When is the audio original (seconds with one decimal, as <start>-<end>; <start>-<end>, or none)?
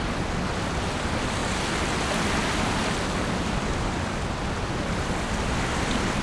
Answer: 0.0-6.2